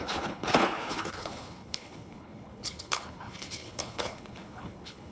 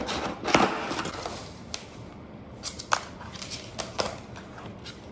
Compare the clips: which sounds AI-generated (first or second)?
first